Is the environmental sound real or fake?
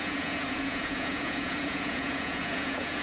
fake